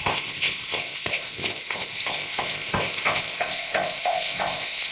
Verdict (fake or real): fake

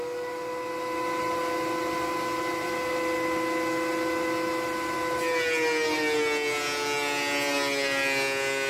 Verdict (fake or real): real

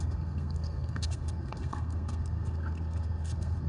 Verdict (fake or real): fake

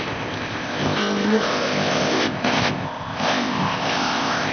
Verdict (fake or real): fake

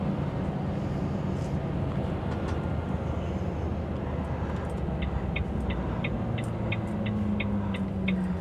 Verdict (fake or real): real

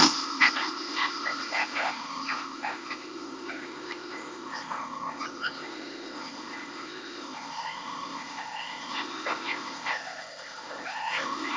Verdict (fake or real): fake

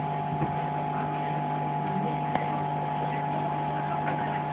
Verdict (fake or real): real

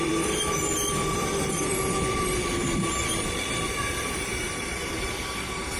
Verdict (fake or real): fake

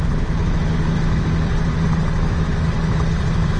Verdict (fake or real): real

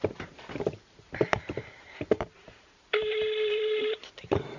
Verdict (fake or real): fake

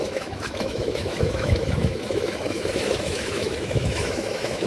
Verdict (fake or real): fake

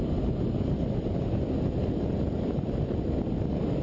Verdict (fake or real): real